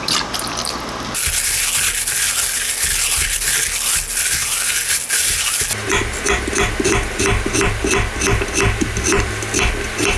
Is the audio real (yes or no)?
yes